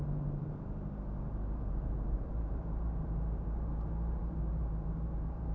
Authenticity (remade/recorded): remade